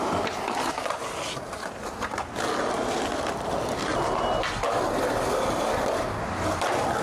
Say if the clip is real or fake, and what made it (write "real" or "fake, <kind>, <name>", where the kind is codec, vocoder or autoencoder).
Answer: real